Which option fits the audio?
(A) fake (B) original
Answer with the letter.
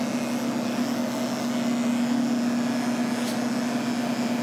B